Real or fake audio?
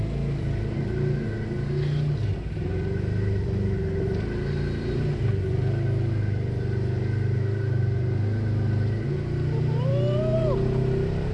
real